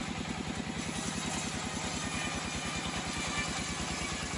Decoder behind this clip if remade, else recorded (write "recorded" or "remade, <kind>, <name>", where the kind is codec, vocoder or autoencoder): recorded